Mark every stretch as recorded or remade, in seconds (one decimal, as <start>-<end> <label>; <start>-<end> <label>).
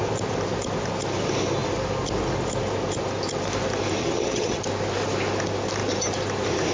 0.0-4.0 recorded; 4.0-4.6 remade; 4.6-6.7 recorded